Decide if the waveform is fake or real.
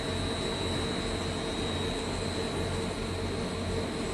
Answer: real